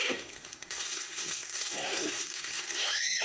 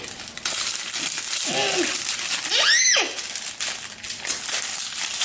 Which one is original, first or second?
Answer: second